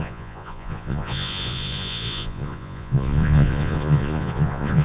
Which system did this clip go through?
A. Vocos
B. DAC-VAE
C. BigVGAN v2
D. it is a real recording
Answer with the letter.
A